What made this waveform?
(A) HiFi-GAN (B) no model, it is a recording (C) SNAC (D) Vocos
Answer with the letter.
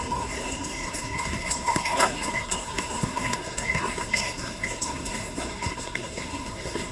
C